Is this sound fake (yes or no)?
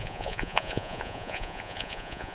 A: yes